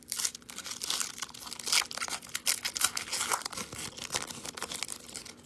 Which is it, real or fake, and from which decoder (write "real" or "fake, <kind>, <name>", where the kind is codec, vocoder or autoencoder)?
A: real